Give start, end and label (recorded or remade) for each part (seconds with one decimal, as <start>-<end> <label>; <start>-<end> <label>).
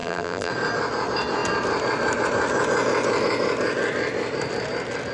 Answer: 0.0-0.5 remade; 0.5-5.1 recorded